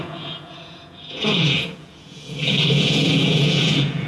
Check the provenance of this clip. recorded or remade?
remade